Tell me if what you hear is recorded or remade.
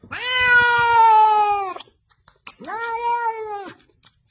recorded